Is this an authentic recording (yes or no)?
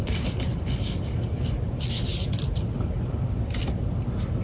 yes